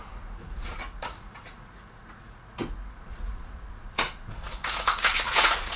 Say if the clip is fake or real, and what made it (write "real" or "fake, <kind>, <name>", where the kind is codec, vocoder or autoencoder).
fake, vocoder, Vocos